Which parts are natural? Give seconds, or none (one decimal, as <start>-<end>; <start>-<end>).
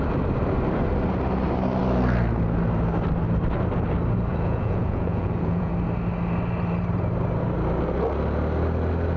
0.0-4.3; 5.7-9.2